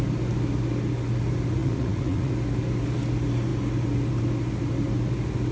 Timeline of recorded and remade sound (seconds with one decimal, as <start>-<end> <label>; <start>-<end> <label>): 0.0-1.6 recorded; 1.6-2.3 remade; 2.3-5.5 recorded